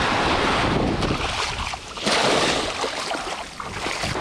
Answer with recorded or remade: recorded